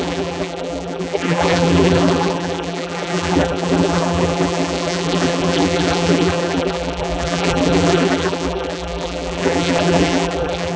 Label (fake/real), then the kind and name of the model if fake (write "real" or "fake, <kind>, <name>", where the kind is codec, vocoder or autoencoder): fake, vocoder, BigVGAN v2